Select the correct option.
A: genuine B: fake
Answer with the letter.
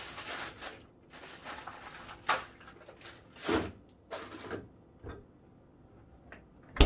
A